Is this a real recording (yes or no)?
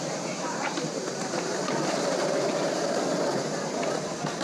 yes